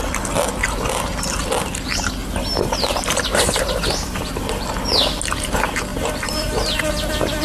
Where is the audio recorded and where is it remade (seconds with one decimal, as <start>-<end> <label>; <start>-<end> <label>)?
0.0-2.2 recorded; 2.2-4.4 remade; 4.4-5.9 recorded; 5.9-6.8 remade; 6.8-7.4 recorded